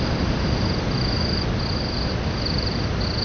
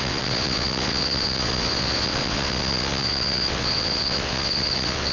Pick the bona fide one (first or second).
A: first